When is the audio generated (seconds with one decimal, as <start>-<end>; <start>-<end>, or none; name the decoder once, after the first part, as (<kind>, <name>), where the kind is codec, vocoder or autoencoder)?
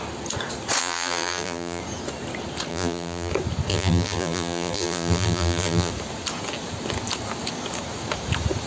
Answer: 0.8-1.8 (vocoder, BigVGAN v2); 2.7-3.3; 3.7-5.9